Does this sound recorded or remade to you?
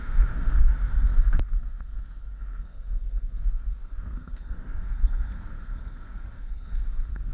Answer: remade